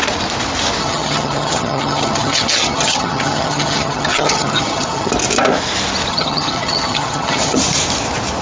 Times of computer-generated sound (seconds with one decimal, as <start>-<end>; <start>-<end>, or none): 0.8-5.1; 6.1-7.6